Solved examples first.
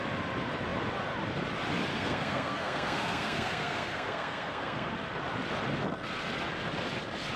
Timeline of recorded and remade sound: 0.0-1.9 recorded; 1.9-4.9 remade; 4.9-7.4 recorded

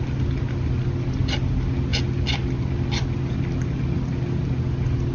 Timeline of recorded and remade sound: 0.0-5.1 recorded

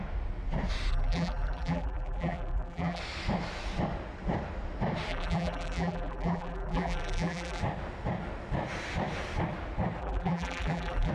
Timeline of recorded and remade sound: 0.0-0.9 recorded; 0.9-3.0 remade; 3.0-5.1 recorded; 5.1-7.6 remade; 7.6-10.0 recorded; 10.0-11.1 remade

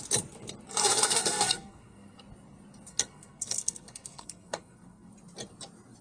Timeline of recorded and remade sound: 0.0-0.8 recorded; 0.8-2.2 remade; 2.2-2.9 recorded; 2.9-5.1 remade; 5.1-6.0 recorded

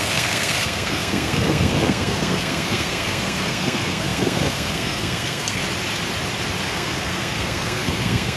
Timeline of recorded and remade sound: 0.0-5.6 remade; 5.6-6.6 recorded; 6.6-8.4 remade

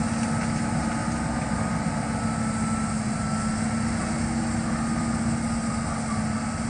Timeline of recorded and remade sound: 0.0-6.7 recorded